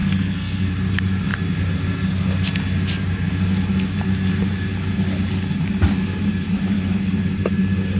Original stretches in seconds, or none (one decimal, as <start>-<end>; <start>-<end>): 0.7-8.0